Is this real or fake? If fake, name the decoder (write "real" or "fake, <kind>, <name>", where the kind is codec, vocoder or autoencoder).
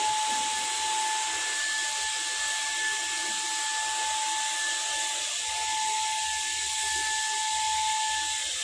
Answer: real